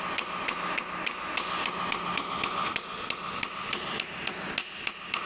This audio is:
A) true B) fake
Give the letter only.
A